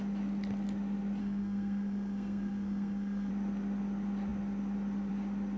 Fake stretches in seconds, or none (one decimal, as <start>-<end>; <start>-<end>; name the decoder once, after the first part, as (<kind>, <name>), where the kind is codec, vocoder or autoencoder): 1.2-3.3 (codec, SNAC)